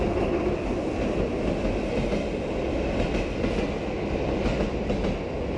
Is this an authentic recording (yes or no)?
yes